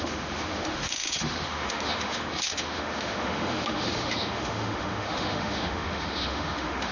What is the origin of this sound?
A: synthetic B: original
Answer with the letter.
A